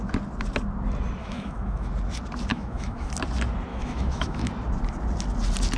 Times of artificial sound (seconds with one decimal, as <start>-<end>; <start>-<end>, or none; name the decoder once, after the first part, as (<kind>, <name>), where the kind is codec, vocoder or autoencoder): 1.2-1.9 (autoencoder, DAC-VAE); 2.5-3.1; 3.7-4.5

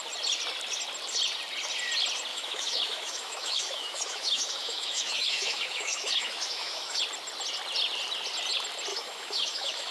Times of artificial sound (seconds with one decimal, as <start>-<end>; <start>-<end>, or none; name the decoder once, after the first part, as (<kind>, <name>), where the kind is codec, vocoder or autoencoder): 2.3-7.0 (autoencoder, DAC-VAE); 8.9-9.9

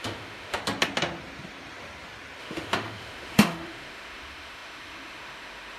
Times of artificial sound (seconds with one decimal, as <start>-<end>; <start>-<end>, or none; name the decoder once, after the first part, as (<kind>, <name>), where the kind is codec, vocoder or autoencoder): 0.0-0.6 (autoencoder, DAC-VAE); 2.4-5.8

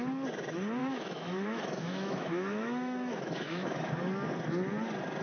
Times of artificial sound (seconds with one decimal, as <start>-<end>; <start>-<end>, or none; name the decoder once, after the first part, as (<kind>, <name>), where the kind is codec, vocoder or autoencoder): 0.8-3.9 (autoencoder, DAC-VAE)

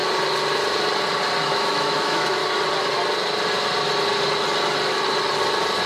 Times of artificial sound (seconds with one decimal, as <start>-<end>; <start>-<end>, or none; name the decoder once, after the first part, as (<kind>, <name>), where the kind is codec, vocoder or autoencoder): 1.4-2.4 (autoencoder, DAC-VAE)

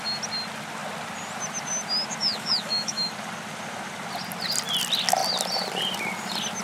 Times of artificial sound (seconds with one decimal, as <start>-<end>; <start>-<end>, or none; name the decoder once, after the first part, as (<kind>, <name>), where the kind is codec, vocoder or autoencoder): 2.2-3.1 (autoencoder, DAC-VAE)

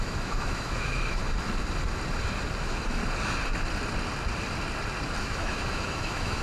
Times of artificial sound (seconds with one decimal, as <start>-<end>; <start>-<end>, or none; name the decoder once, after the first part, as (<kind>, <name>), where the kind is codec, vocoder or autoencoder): 0.0-1.2 (autoencoder, DAC-VAE); 2.6-3.0; 5.2-6.4